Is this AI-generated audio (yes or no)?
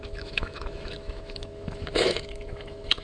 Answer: yes